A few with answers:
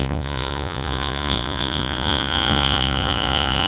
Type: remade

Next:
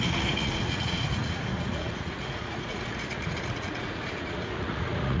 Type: remade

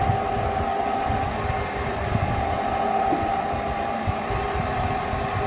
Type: recorded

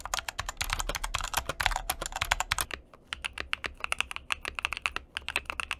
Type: recorded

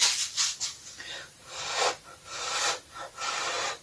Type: recorded